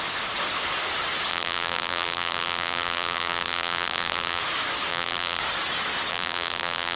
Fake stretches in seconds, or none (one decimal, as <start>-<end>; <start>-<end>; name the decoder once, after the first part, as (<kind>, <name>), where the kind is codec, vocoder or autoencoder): 1.3-4.4 (vocoder, BigVGAN v2); 4.9-5.4; 6.1-7.0

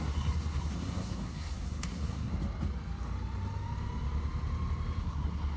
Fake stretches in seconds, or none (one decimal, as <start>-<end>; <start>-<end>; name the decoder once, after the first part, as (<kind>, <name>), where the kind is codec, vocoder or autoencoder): 0.0-2.3 (codec, SNAC); 5.0-5.6

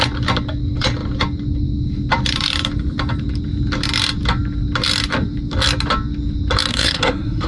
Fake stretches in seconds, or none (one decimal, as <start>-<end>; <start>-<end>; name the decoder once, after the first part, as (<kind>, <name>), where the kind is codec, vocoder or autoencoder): 6.7-7.5 (codec, SNAC)

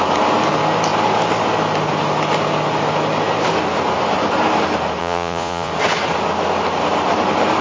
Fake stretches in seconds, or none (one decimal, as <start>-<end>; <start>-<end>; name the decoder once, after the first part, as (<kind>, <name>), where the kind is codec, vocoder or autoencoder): 5.0-5.7 (vocoder, Vocos)

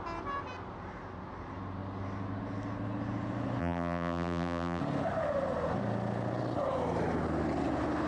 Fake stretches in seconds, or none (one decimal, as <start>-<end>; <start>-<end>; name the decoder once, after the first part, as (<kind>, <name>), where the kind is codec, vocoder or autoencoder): 3.6-4.8 (vocoder, BigVGAN v2)

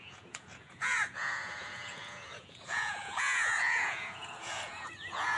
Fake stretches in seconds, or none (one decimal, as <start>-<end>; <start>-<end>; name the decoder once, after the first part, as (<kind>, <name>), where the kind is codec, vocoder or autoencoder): 0.0-5.4 (vocoder, Vocos)